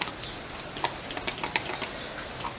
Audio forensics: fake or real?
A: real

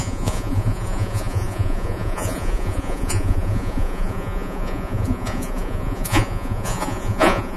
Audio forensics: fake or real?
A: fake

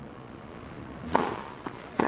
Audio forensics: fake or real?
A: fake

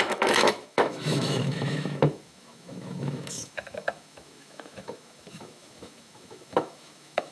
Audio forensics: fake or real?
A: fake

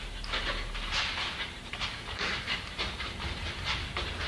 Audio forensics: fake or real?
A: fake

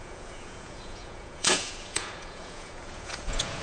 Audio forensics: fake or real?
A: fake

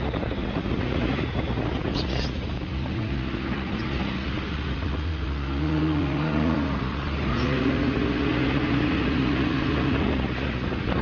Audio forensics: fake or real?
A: fake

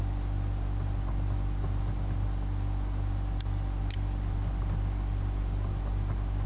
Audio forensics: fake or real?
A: real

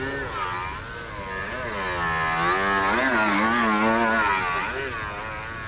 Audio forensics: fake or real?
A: real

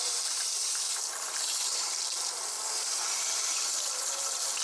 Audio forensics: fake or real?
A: real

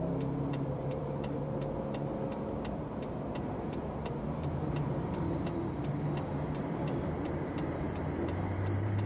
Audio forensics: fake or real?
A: fake